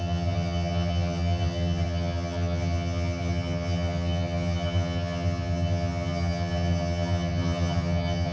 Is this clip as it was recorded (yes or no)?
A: no